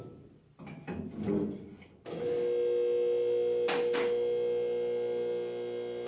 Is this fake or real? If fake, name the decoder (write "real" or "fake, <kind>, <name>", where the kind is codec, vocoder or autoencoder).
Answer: real